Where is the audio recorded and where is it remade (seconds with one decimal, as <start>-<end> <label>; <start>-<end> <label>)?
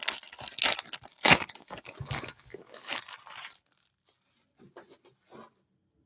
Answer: 0.0-1.1 recorded; 1.1-3.0 remade; 3.0-6.1 recorded